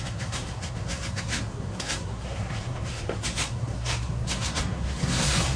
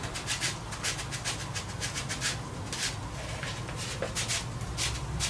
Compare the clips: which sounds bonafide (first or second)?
second